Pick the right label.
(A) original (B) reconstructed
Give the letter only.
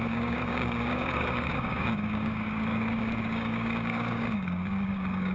B